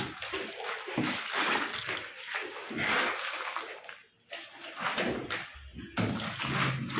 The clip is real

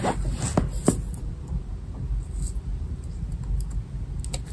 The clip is real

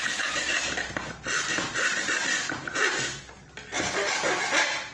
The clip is real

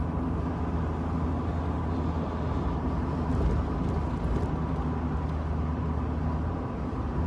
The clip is real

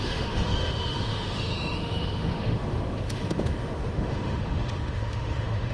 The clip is fake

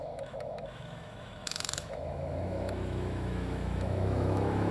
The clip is fake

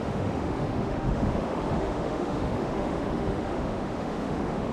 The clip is fake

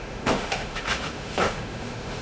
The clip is fake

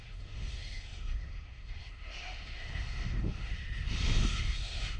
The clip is fake